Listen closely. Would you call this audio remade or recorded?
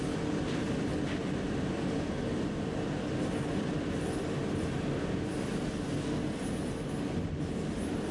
recorded